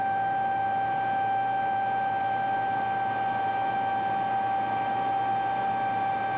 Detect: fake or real real